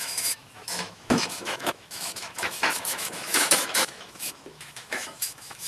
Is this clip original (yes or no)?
no